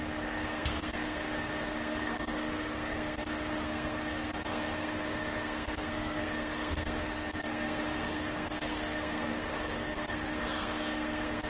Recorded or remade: remade